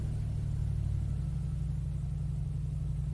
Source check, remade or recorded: recorded